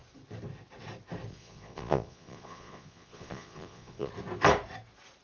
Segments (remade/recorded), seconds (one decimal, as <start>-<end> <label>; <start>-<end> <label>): 0.0-1.3 recorded; 1.3-4.1 remade; 4.1-5.2 recorded